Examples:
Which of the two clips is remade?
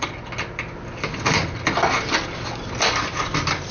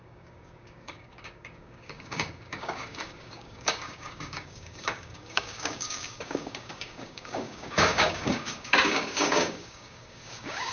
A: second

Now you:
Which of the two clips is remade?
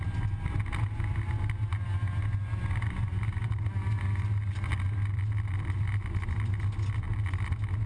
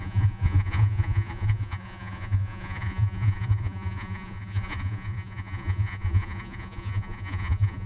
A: second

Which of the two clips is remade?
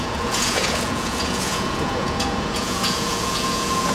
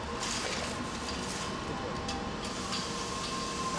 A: first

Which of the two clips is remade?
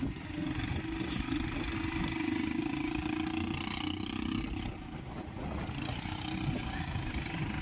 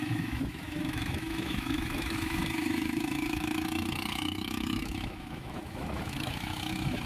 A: second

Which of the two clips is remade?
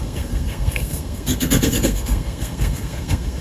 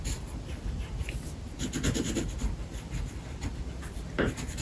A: first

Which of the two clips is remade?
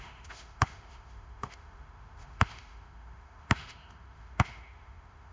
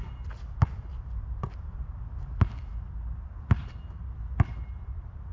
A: first